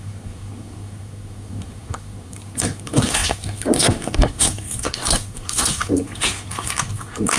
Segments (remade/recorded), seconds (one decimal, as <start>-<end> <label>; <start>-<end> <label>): 0.0-7.4 remade